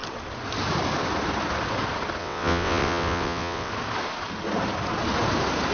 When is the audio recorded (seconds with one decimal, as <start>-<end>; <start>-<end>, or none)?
0.0-2.2; 3.7-5.7